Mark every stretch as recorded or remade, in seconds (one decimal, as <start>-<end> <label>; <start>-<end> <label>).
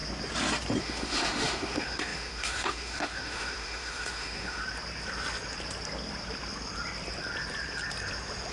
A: 0.0-0.8 recorded; 0.8-4.6 remade; 4.6-8.5 recorded